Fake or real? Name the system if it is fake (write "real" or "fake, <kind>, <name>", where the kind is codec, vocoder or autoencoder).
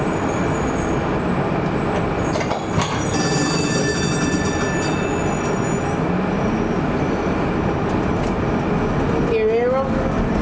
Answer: real